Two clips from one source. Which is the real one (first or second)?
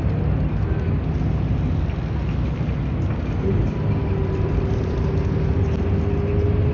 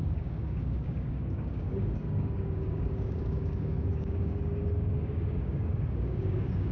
first